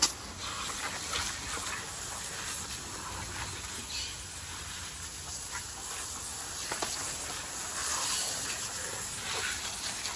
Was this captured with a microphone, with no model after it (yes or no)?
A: yes